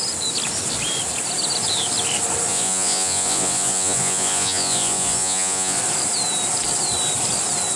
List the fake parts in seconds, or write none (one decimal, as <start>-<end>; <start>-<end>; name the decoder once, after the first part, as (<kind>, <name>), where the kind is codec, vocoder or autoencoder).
2.5-5.8 (vocoder, Vocos)